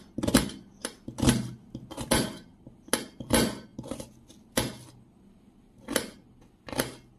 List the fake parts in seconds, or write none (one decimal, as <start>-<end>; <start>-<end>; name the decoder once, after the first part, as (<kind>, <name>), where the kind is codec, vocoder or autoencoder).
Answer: none